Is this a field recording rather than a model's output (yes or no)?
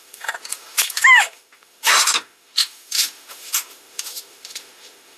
no